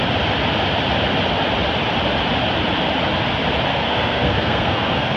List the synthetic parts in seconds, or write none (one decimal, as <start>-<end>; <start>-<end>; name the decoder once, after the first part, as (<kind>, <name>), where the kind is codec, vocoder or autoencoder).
3.7-5.2 (codec, SNAC)

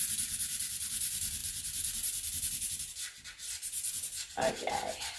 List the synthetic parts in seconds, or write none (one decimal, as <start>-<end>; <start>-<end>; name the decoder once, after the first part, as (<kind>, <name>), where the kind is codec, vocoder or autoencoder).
none

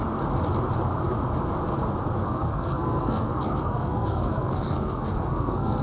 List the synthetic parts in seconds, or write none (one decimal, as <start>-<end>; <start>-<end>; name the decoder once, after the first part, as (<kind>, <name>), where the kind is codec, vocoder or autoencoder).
2.2-5.8 (codec, SNAC)